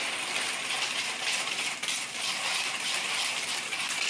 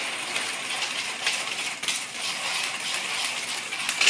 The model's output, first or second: first